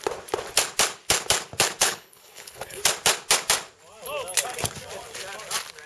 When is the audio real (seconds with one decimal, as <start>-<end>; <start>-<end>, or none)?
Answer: 0.0-1.8; 2.8-5.9